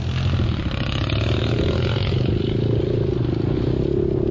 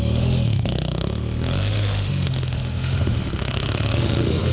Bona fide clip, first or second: first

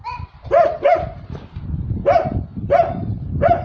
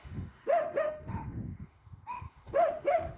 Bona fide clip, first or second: first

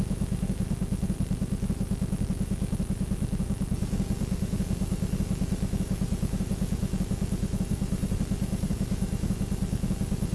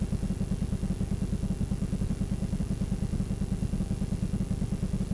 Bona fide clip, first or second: second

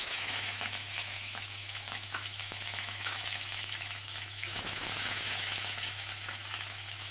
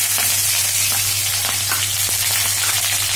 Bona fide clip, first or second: second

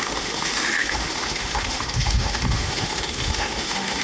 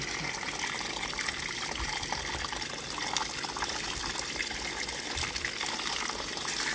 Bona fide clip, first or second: second